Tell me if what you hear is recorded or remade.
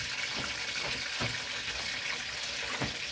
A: recorded